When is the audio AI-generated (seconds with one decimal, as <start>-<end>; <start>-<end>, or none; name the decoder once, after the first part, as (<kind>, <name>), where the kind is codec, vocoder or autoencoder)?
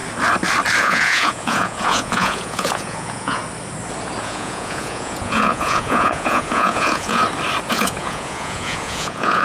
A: 0.8-3.4 (vocoder, Vocos); 4.2-7.2; 7.7-9.4